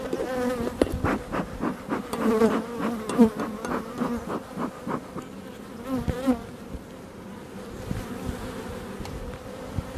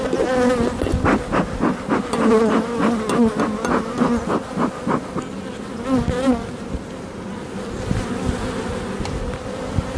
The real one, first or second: second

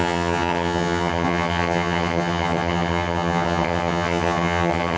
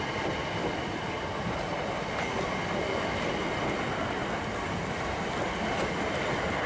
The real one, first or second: second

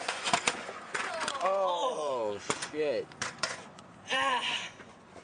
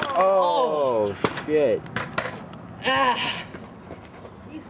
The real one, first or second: second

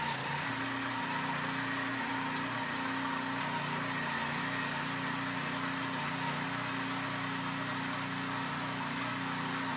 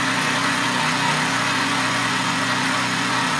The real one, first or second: first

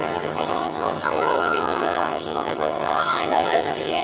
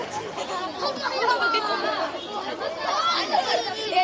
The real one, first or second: second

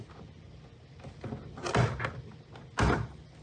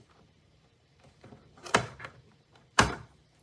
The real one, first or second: first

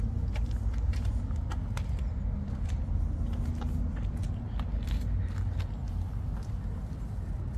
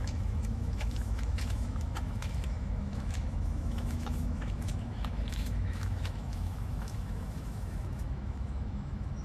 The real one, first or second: first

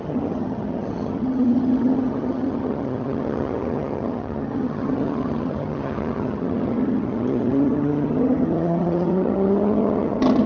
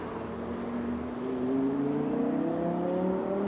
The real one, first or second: second